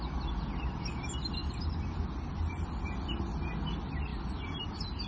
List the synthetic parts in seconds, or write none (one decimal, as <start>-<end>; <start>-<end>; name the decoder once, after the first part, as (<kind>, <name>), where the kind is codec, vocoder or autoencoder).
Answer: none